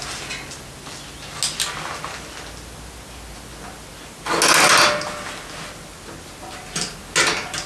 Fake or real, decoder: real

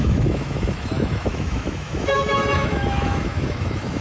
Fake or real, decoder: fake, autoencoder, DAC-VAE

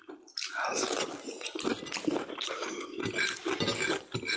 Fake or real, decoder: real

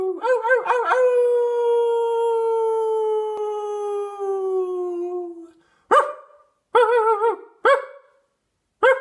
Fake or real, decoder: real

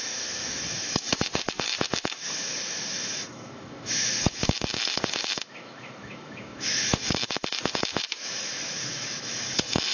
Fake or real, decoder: fake, autoencoder, DAC-VAE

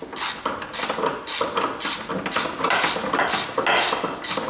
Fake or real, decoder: real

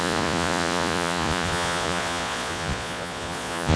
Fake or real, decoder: fake, vocoder, Vocos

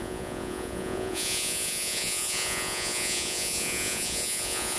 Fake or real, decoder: fake, vocoder, Vocos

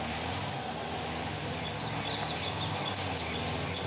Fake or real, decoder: real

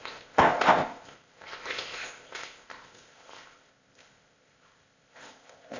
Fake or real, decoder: fake, codec, ZipCodec